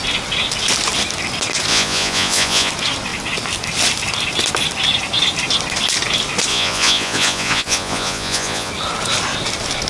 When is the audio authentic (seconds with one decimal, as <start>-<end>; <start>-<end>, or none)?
0.0-1.7; 2.7-6.5; 8.7-9.9